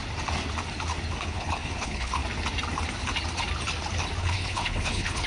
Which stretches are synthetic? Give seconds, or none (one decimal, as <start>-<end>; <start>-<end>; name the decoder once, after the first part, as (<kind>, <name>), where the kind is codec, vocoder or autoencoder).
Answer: 1.2-2.2 (codec, HILCodec); 4.2-5.3